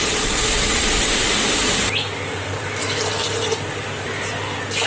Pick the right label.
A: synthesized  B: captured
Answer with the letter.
B